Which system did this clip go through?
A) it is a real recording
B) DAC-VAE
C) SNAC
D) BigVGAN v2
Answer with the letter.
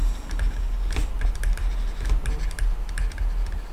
A